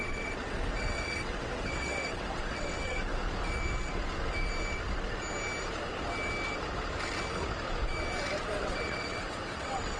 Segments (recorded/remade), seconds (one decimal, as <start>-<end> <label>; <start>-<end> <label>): 0.0-3.2 remade; 3.2-8.4 recorded; 8.4-10.0 remade